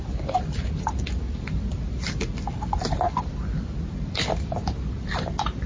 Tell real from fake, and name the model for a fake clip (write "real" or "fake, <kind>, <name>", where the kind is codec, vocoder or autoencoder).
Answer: fake, vocoder, BigVGAN v2